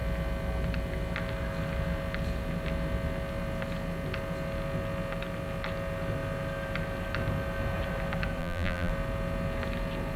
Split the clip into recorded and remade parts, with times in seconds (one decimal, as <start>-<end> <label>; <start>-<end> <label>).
0.0-8.4 recorded; 8.4-8.9 remade; 8.9-10.2 recorded